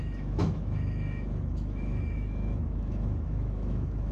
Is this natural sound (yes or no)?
no